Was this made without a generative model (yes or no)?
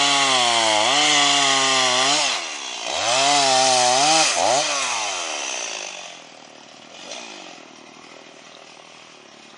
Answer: yes